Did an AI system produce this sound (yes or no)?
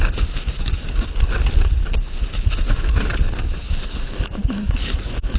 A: no